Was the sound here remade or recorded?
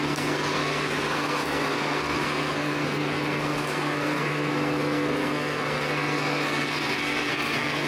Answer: remade